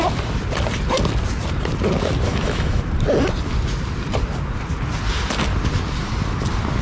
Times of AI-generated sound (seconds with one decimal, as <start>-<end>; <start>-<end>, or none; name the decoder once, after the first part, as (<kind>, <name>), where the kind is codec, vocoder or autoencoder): 2.3-2.8 (autoencoder, DAC-VAE)